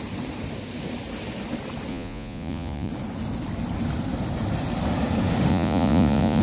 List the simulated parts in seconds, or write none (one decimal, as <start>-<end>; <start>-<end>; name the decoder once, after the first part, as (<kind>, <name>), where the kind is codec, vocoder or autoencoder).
1.9-2.9 (vocoder, Vocos); 5.5-6.4